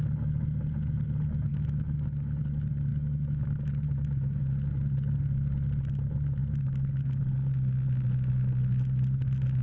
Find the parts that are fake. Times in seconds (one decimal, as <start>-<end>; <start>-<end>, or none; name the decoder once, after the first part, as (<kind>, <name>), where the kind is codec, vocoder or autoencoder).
1.5-2.4 (autoencoder, DAC-VAE); 2.9-4.4